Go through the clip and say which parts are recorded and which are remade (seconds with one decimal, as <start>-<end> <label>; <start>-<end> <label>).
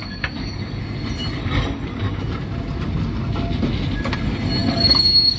0.0-0.8 remade; 0.8-1.4 recorded; 1.4-2.2 remade; 2.2-4.6 recorded; 4.6-5.4 remade